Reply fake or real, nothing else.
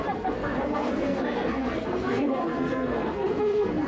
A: fake